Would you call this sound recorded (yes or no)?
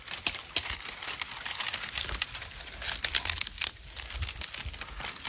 yes